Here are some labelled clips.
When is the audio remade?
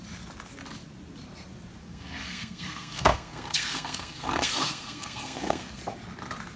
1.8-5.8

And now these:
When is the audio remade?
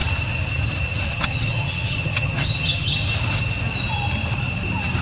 1.1-3.0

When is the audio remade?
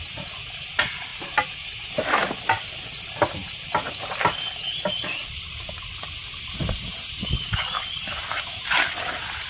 none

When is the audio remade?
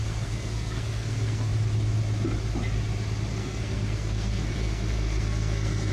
0.0-1.5; 3.3-5.9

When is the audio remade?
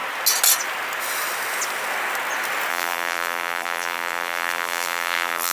2.7-5.5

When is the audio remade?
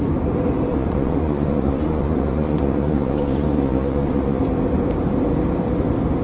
0.7-4.4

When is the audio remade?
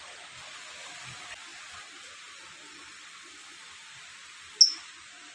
none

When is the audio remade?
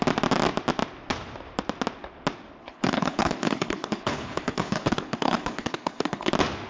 2.6-6.3